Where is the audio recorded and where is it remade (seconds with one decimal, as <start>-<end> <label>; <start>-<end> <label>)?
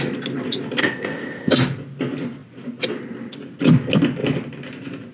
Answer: 0.0-0.8 recorded; 0.8-1.5 remade; 1.5-5.1 recorded